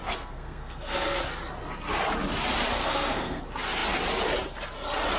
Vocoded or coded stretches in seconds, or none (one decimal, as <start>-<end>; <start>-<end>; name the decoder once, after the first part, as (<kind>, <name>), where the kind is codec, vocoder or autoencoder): 0.0-1.2 (codec, SNAC); 2.8-3.4